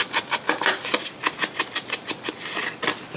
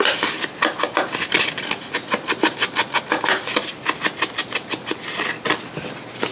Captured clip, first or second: second